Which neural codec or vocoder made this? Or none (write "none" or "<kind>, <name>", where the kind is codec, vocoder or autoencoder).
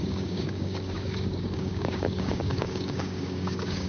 codec, DAC